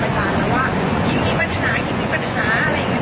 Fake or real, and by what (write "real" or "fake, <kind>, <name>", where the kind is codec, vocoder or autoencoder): fake, vocoder, Vocos